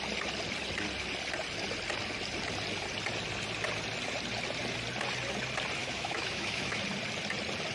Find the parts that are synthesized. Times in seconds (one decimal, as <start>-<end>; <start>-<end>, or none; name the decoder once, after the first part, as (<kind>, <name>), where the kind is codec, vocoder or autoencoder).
5.8-6.8 (autoencoder, DAC-VAE)